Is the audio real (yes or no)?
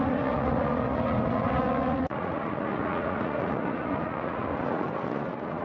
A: no